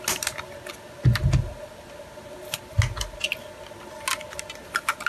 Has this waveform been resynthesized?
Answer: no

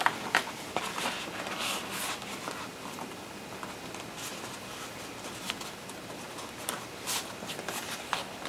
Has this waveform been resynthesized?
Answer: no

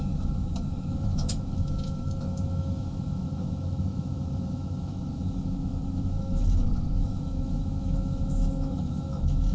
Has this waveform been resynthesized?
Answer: yes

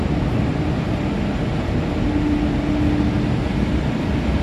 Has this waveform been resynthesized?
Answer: no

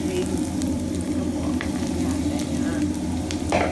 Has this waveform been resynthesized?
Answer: no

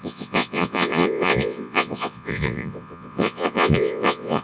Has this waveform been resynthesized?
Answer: yes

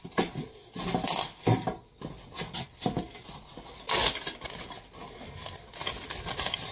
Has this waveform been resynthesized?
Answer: no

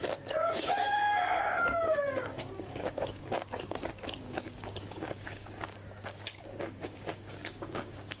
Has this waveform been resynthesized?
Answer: yes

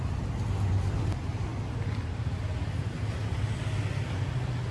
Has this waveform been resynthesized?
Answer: no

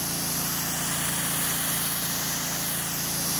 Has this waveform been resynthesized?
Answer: no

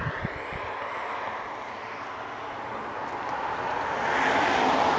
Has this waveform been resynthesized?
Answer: no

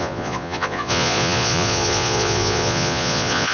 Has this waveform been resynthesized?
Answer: yes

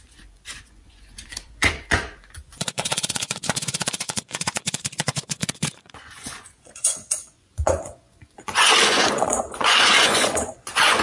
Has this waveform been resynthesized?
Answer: yes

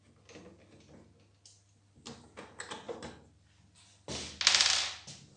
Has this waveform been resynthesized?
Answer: no